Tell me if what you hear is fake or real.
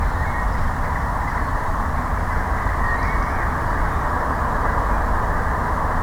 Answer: real